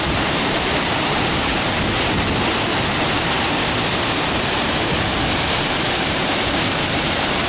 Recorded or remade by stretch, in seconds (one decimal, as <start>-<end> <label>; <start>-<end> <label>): 0.0-1.5 remade; 1.5-6.0 recorded; 6.0-7.5 remade